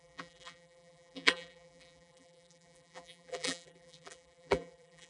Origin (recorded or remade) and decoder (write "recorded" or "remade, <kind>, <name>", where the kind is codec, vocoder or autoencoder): remade, vocoder, BigVGAN v2